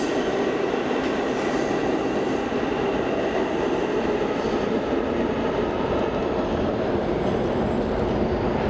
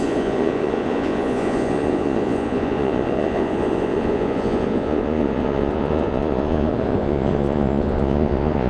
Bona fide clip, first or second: first